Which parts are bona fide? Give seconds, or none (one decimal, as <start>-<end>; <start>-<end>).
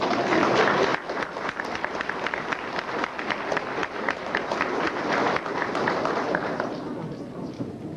0.0-3.8; 5.3-8.0